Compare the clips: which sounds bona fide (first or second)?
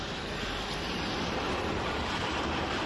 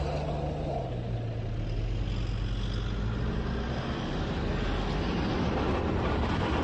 second